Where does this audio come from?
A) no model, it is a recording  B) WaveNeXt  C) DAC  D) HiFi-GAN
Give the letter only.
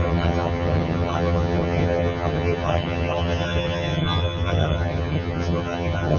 D